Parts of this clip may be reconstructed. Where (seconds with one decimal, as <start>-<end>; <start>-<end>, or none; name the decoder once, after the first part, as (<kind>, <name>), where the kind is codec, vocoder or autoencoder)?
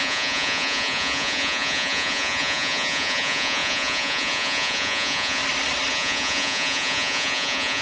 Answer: 0.0-5.4 (vocoder, Vocos); 5.9-7.8